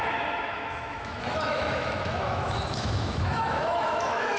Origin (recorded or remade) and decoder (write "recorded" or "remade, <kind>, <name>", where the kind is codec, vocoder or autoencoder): remade, autoencoder, DAC-VAE